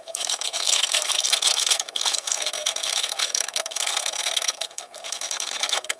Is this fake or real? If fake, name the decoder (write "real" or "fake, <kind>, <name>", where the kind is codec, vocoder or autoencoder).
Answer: fake, codec, SNAC